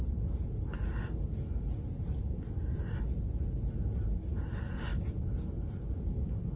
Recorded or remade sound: recorded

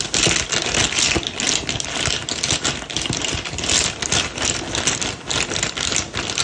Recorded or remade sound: recorded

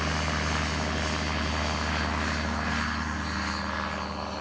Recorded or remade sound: recorded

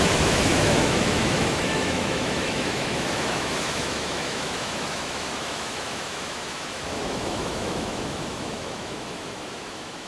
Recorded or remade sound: remade